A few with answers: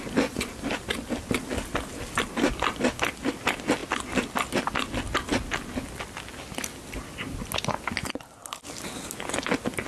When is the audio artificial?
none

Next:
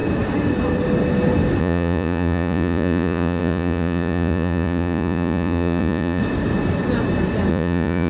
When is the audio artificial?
1.6-6.2 (vocoder, Vocos); 7.5-8.1